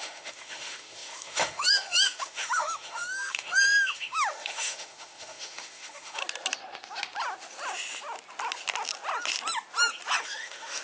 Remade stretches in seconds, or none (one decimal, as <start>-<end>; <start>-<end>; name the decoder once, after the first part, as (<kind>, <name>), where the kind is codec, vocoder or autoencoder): 0.0-6.2 (autoencoder, DAC-VAE); 10.2-10.8